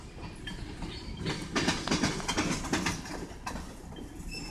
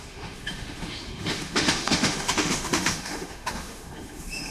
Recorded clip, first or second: first